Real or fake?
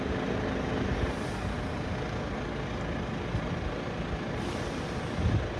real